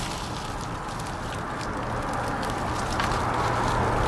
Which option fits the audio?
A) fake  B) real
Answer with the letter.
B